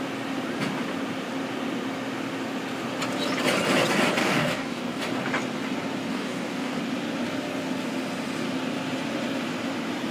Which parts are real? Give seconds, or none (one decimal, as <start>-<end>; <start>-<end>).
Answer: 0.0-4.2; 5.0-6.1; 6.8-10.1